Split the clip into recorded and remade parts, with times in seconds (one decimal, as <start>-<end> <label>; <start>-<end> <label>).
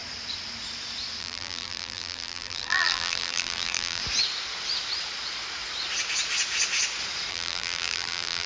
0.0-1.2 recorded; 1.2-4.0 remade; 4.0-7.3 recorded; 7.3-8.5 remade